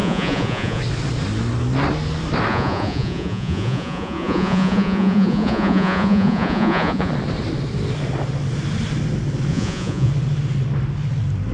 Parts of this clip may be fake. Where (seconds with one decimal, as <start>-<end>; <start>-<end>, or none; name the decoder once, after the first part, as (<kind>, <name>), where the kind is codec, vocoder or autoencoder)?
0.0-0.8 (vocoder, Vocos); 2.5-7.1; 9.5-10.1